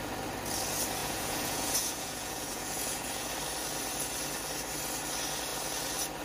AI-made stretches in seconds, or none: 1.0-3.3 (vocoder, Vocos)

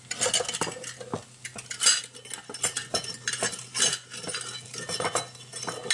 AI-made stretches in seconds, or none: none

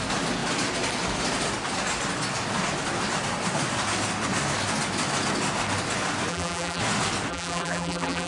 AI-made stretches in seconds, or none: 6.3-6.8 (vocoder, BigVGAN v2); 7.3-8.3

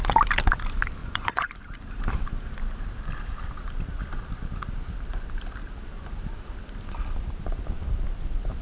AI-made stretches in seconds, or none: 1.0-1.6 (vocoder, Vocos)

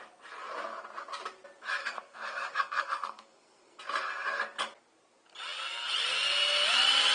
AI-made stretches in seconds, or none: 1.8-3.8 (codec, SNAC)